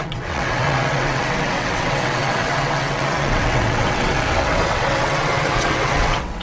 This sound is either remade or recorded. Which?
remade